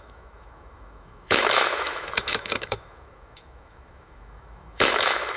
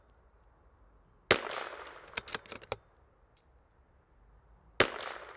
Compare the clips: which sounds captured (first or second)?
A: second